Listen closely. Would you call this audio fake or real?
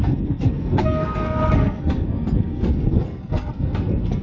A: fake